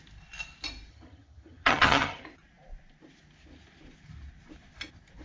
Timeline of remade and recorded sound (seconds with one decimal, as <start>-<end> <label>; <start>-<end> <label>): 0.0-0.9 recorded; 0.9-2.2 remade; 2.2-5.2 recorded